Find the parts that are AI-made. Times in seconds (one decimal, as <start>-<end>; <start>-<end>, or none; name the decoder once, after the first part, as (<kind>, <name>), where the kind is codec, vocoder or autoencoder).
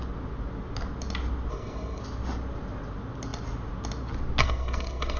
1.5-2.0 (codec, SNAC); 4.4-5.2